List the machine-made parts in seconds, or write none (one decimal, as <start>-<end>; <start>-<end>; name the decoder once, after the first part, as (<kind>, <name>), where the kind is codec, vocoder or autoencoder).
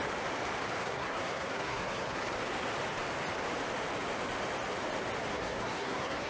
0.8-2.2 (codec, SNAC); 5.3-6.3